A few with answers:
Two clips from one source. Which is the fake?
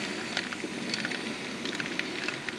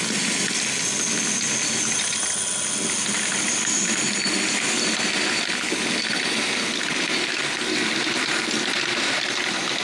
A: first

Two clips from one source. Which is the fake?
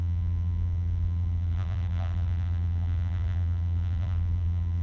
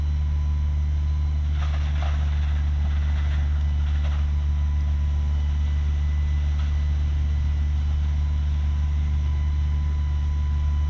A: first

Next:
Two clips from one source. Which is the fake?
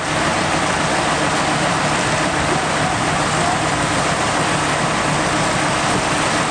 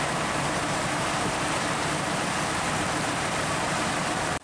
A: second